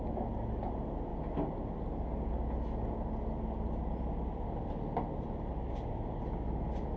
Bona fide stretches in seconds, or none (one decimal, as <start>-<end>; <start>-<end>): 0.0-7.0